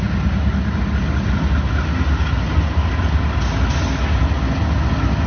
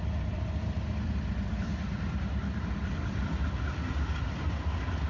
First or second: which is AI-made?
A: second